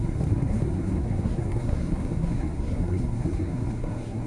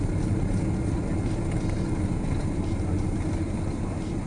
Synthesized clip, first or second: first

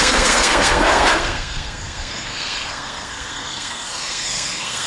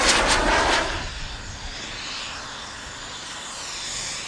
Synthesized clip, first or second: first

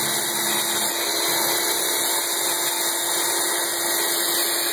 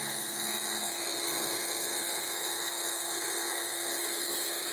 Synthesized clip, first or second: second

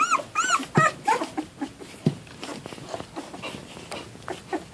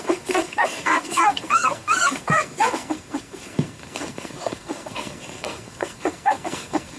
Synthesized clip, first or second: second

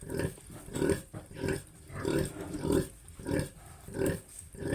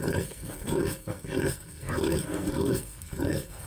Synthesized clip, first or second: second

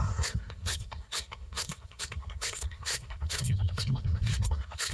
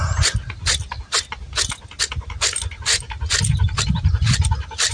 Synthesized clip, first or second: first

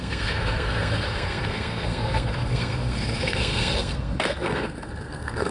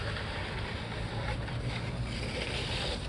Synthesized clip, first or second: first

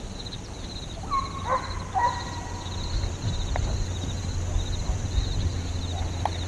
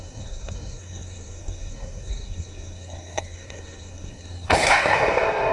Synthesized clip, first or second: second